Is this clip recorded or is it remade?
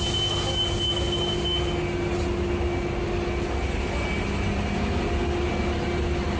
recorded